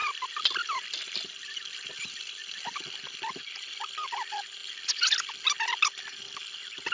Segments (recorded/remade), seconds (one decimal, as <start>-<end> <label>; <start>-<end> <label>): 0.0-6.9 recorded